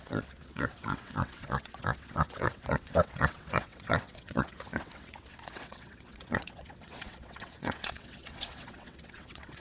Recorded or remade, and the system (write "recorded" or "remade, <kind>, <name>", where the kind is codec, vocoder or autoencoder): remade, vocoder, WaveNeXt